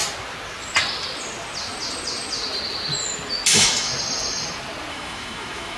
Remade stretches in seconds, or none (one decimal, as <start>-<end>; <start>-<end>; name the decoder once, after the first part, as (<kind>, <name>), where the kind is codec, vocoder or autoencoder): 3.5-3.9 (autoencoder, DAC-VAE); 4.9-5.8